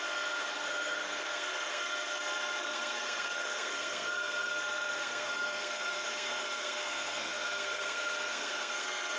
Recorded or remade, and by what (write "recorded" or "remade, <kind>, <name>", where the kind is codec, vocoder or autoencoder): remade, codec, SNAC